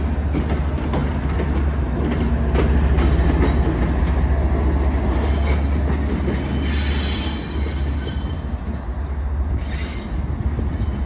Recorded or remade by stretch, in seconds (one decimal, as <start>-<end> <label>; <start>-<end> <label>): 0.0-11.1 recorded